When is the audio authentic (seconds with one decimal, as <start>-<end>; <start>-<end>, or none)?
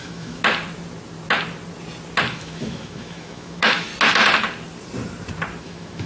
0.4-2.3; 3.9-5.6